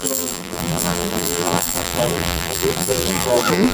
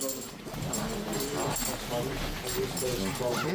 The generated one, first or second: first